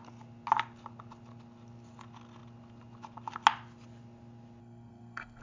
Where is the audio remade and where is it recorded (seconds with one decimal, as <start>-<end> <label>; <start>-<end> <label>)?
0.0-4.6 recorded; 4.6-5.4 remade